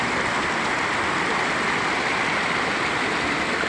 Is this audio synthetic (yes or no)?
no